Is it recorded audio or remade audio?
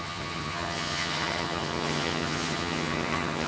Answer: remade